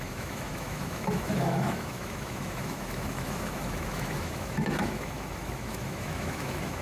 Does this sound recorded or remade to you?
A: remade